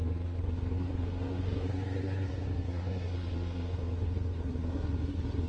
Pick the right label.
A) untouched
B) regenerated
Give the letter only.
B